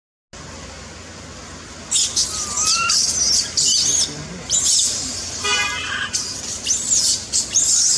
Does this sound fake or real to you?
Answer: real